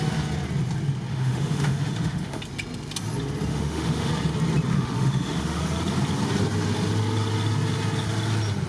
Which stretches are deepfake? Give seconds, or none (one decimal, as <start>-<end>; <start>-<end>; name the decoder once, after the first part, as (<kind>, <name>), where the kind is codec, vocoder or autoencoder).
1.1-2.4 (autoencoder, DAC-VAE); 3.5-4.1; 4.7-5.6